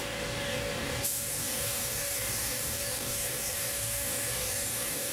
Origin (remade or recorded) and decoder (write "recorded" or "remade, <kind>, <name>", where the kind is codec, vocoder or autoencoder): remade, codec, DAC